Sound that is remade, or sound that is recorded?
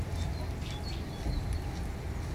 recorded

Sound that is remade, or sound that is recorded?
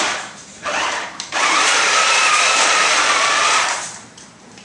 remade